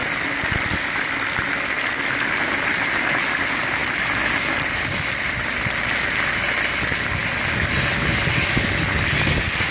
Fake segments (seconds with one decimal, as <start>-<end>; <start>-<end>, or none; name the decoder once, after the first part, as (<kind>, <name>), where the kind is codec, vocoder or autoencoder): none

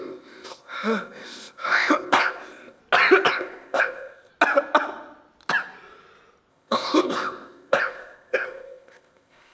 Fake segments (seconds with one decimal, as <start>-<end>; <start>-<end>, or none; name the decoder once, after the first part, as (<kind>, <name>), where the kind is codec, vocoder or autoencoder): 0.0-2.8 (codec, ZipCodec); 3.3-4.3; 6.5-9.5

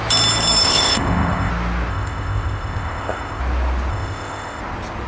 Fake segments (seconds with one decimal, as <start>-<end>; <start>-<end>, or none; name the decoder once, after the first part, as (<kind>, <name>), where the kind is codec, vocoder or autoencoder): 0.6-1.5 (codec, ZipCodec); 1.9-3.4; 3.9-4.6

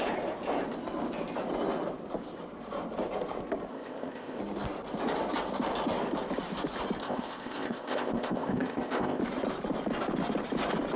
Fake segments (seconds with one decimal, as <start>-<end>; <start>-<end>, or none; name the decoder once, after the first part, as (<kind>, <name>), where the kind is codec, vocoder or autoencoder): 3.7-4.4 (codec, ZipCodec); 7.0-9.2

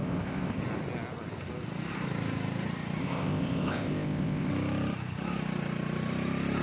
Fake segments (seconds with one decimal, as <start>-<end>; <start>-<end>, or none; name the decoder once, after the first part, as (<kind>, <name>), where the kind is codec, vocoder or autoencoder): 0.0-0.6 (codec, ZipCodec); 3.0-4.5

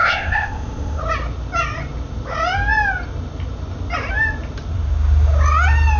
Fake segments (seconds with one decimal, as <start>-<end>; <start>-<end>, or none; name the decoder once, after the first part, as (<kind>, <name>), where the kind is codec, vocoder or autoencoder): 0.0-1.0 (codec, ZipCodec)